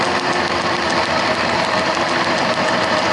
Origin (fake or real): real